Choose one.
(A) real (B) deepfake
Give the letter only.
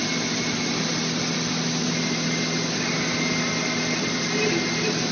A